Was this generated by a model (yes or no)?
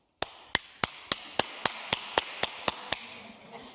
no